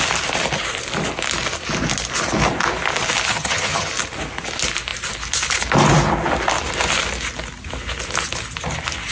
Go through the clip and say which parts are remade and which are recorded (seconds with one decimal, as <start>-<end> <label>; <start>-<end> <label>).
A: 0.0-3.3 recorded; 3.3-3.9 remade; 3.9-9.1 recorded